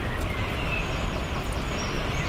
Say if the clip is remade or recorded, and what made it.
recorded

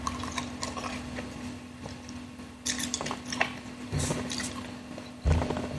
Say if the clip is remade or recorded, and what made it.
recorded